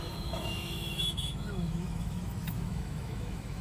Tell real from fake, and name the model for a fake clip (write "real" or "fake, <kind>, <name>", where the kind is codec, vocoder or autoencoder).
fake, autoencoder, DAC-VAE